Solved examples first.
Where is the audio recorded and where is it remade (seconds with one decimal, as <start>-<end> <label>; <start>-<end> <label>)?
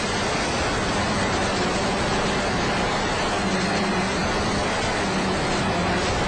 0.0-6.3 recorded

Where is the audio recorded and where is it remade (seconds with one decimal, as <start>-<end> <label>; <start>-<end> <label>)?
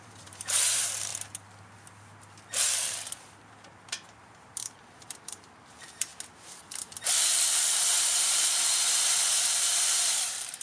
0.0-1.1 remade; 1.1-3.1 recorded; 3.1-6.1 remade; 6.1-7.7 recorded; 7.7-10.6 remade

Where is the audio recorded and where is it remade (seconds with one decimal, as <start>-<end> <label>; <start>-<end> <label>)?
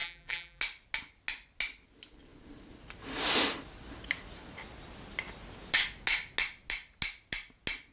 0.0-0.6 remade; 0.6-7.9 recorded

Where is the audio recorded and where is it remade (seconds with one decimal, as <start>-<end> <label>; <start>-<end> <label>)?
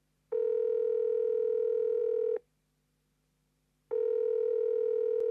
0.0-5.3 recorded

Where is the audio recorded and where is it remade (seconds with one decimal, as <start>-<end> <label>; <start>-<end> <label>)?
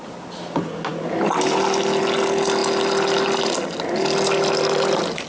0.0-5.3 recorded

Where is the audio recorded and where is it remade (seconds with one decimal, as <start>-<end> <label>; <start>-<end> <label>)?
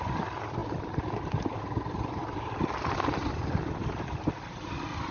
0.0-5.1 remade